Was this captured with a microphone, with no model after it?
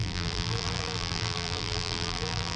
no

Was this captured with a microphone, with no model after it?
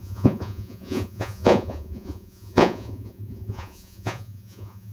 no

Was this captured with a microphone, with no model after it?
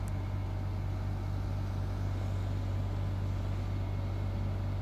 yes